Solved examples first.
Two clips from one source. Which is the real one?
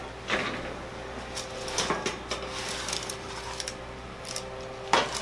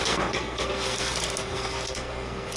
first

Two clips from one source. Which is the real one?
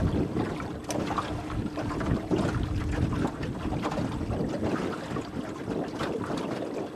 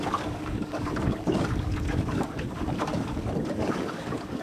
first